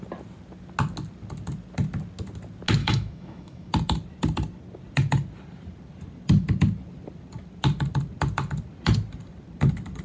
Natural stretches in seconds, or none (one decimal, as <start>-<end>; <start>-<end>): 0.0-2.8; 3.7-10.0